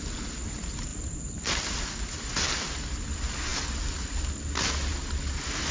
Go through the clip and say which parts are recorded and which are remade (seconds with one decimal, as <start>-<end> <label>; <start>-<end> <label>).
0.0-5.7 recorded

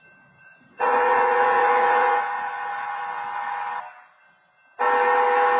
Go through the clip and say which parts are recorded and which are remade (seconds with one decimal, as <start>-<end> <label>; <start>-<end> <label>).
0.0-0.4 recorded; 0.4-3.8 remade; 3.8-5.6 recorded

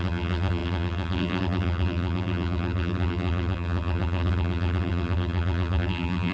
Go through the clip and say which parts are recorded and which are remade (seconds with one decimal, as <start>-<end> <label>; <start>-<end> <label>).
0.0-6.3 remade

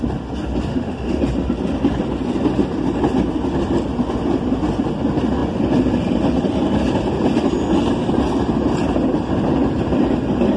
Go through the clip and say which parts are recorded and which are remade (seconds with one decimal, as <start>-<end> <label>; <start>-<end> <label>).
0.0-0.7 recorded; 0.7-1.2 remade; 1.2-10.6 recorded

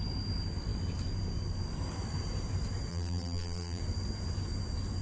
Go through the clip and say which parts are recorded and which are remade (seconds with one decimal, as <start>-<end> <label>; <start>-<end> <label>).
0.0-2.9 recorded; 2.9-3.8 remade; 3.8-5.0 recorded

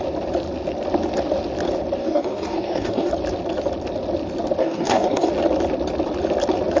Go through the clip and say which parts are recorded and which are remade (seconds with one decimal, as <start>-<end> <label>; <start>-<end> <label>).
0.0-2.0 recorded; 2.0-3.1 remade; 3.1-4.6 recorded; 4.6-5.3 remade; 5.3-6.8 recorded

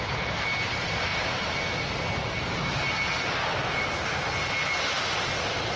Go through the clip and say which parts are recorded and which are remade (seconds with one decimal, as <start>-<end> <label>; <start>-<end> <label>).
0.0-5.8 recorded

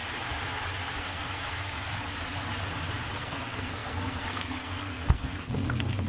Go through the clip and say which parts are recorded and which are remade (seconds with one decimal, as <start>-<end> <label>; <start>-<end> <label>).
0.0-1.0 recorded; 1.0-1.9 remade; 1.9-3.1 recorded; 3.1-6.1 remade